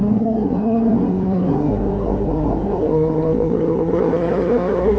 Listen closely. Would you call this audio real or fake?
fake